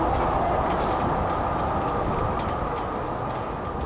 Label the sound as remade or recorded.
recorded